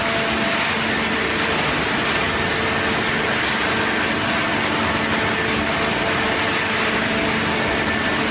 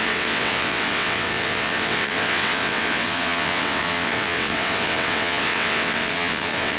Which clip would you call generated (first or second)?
second